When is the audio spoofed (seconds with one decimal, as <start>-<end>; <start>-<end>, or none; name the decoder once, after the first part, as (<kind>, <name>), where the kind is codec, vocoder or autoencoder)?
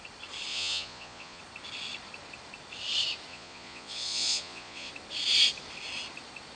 0.5-1.4 (vocoder, Vocos); 3.3-4.9